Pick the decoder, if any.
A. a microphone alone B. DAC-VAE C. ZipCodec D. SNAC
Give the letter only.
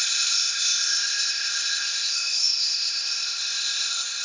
C